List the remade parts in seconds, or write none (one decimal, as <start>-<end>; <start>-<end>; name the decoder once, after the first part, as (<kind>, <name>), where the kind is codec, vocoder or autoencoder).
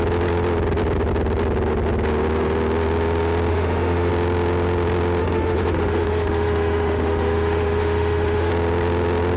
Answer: 3.5-4.1 (autoencoder, DAC-VAE); 5.2-8.5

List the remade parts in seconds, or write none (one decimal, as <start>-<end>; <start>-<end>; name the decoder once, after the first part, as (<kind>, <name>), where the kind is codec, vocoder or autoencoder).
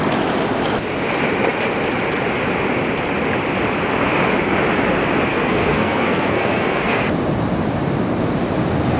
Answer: 5.3-7.1 (codec, SNAC)